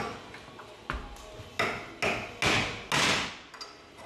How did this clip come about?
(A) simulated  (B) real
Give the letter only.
B